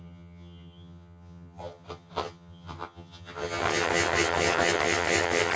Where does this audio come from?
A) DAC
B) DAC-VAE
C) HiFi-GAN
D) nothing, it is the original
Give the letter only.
C